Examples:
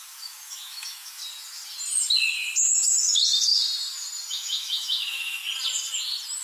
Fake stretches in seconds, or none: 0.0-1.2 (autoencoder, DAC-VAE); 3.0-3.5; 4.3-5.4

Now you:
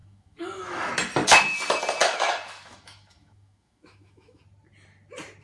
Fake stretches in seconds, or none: 0.0-0.9 (autoencoder, DAC-VAE); 2.0-4.4

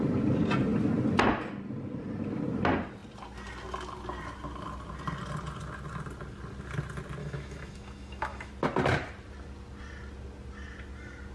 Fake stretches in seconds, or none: 7.2-8.5 (autoencoder, DAC-VAE)

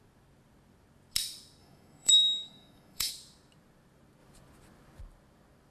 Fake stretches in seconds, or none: 1.6-3.1 (autoencoder, DAC-VAE)